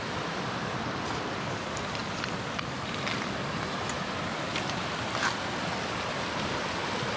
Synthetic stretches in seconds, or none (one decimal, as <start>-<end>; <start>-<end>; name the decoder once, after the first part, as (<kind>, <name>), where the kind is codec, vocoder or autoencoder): 0.0-2.0 (vocoder, BigVGAN v2); 6.3-7.2